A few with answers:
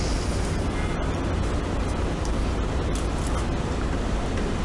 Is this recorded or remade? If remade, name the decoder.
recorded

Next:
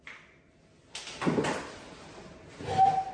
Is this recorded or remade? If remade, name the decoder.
recorded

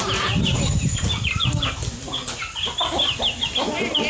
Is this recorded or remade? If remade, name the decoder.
recorded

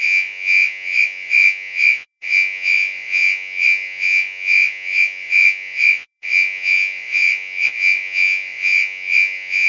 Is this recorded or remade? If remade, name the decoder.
remade, vocoder, Vocos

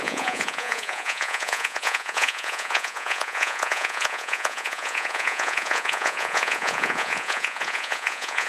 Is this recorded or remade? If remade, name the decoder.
remade, vocoder, Vocos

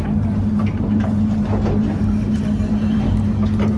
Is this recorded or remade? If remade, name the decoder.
recorded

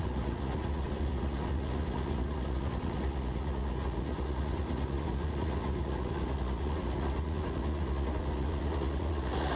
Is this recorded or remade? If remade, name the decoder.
remade, vocoder, Vocos